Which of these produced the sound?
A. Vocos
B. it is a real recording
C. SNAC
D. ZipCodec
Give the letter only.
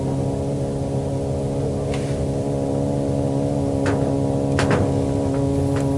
B